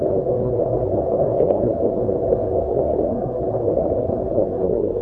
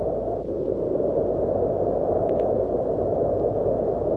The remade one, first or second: first